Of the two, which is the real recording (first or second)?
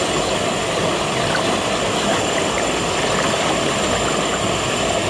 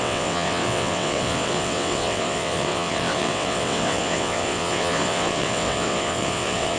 first